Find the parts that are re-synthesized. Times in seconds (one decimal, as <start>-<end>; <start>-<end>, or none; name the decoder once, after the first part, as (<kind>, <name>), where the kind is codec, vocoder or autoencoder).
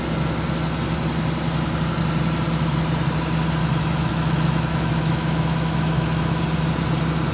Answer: 3.6-6.4 (autoencoder, DAC-VAE)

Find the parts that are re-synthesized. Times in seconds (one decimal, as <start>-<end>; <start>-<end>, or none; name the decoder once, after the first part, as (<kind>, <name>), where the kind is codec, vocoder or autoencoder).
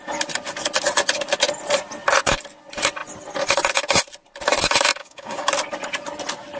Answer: 5.0-5.5 (codec, DAC)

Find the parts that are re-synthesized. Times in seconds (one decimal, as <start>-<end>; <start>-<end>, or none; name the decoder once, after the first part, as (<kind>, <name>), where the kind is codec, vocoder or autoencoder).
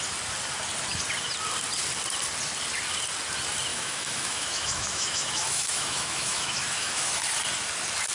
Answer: 3.7-7.2 (autoencoder, DAC-VAE)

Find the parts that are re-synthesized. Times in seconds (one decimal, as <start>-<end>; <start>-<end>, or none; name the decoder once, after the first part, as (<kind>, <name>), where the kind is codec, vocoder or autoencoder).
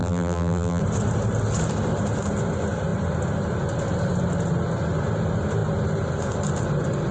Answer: 0.0-0.8 (vocoder, BigVGAN v2)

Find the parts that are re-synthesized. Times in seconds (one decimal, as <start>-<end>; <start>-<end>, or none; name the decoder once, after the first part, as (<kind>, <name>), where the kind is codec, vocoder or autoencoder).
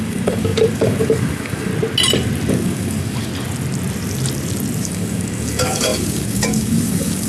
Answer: 0.0-1.7 (codec, DAC); 2.5-3.3; 4.8-7.3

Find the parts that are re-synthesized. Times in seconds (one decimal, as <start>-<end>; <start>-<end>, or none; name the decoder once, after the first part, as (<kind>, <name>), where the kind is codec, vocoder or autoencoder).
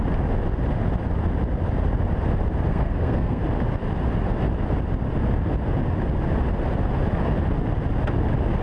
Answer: 2.7-3.4 (codec, SNAC)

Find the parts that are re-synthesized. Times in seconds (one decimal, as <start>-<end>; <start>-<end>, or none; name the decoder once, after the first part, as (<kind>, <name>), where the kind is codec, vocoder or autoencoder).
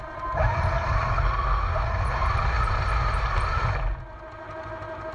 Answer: none